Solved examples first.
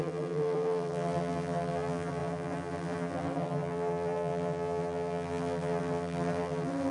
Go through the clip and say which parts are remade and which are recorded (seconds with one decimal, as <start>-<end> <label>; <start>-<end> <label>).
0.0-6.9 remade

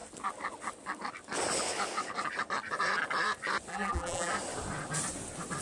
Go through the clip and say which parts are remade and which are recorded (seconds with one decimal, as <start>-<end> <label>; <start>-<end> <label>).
0.0-3.7 recorded; 3.7-4.3 remade; 4.3-5.6 recorded

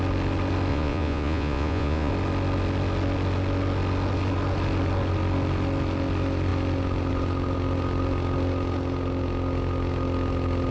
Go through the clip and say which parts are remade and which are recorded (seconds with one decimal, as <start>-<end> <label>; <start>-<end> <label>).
0.0-0.7 recorded; 0.7-2.1 remade; 2.1-10.7 recorded

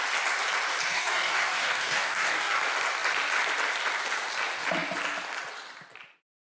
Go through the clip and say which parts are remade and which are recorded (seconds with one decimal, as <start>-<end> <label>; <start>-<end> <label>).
0.0-0.9 recorded; 0.9-2.6 remade; 2.6-6.5 recorded